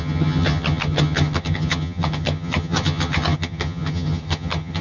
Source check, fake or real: fake